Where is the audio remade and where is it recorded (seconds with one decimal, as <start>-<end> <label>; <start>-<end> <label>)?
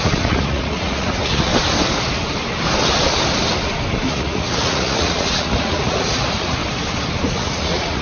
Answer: 0.0-1.5 remade; 1.5-4.1 recorded; 4.1-6.6 remade; 6.6-7.2 recorded; 7.2-8.0 remade